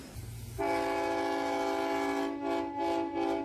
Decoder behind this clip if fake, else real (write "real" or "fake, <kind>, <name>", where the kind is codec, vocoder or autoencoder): real